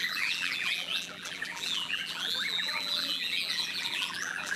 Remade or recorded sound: remade